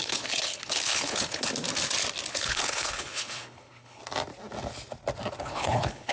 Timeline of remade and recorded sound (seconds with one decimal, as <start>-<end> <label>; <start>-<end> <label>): 0.0-1.5 remade; 1.5-2.3 recorded; 2.3-4.0 remade; 4.0-5.4 recorded; 5.4-6.1 remade